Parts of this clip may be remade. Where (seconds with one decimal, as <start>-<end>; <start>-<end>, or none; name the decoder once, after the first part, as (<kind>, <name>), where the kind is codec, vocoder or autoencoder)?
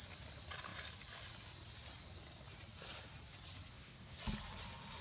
3.7-4.2 (codec, SNAC)